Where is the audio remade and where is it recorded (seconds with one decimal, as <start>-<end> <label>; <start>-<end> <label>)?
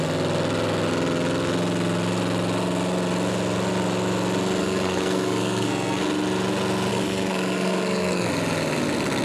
0.0-4.6 recorded; 4.6-6.0 remade; 6.0-6.9 recorded; 6.9-8.3 remade; 8.3-9.2 recorded